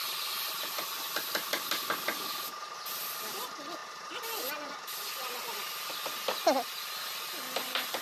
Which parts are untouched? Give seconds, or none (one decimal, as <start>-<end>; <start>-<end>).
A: 0.0-8.0